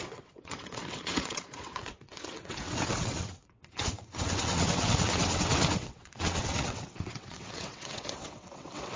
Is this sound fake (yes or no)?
yes